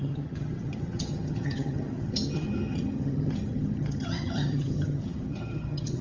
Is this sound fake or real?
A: fake